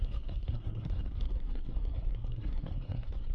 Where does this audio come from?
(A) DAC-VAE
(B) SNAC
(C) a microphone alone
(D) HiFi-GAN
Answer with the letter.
B